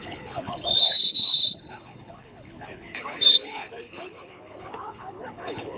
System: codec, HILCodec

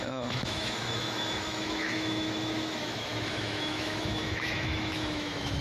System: autoencoder, DAC-VAE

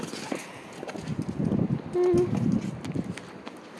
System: none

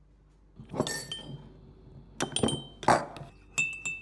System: none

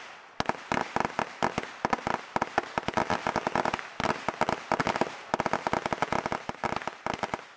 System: none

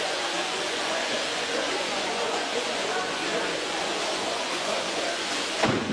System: vocoder, Vocos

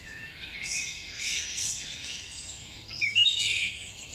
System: codec, SNAC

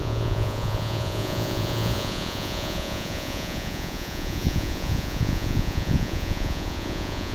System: vocoder, Vocos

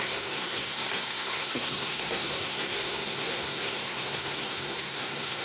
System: codec, SNAC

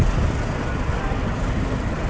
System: none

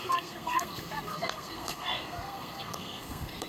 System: codec, SNAC